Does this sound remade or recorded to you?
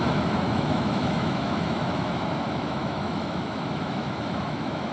remade